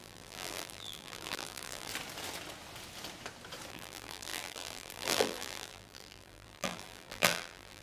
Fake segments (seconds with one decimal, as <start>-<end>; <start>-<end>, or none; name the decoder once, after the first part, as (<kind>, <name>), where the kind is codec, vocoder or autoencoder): 0.0-1.9 (vocoder, BigVGAN v2); 3.7-7.8